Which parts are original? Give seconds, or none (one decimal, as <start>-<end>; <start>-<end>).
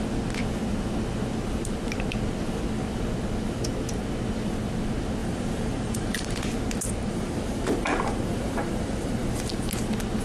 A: 0.0-5.2; 6.3-7.1; 9.5-10.2